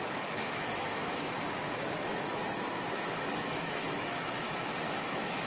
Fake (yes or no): yes